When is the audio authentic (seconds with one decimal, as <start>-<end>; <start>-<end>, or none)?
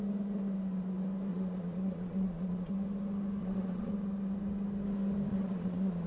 0.0-1.3; 2.7-3.4; 3.9-5.3